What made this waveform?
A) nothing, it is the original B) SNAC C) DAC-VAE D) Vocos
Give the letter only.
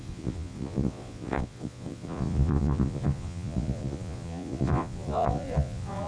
D